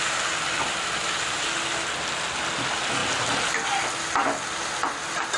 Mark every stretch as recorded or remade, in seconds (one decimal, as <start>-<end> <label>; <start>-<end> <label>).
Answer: 0.0-5.4 recorded